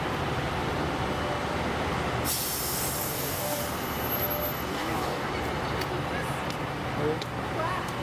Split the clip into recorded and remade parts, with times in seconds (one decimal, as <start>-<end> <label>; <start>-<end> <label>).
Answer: 0.0-3.0 recorded; 3.0-3.6 remade; 3.6-4.7 recorded; 4.7-5.3 remade; 5.3-8.0 recorded